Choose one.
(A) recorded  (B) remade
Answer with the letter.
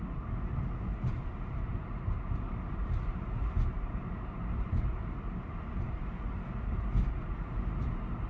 B